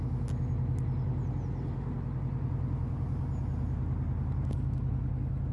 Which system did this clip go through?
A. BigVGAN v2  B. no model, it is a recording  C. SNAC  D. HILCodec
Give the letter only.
B